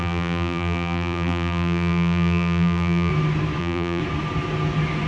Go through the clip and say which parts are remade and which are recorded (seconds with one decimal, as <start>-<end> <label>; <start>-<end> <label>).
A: 0.0-3.1 remade; 3.1-3.6 recorded; 3.6-4.0 remade; 4.0-5.1 recorded